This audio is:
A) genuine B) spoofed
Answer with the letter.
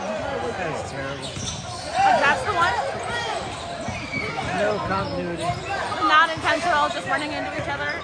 A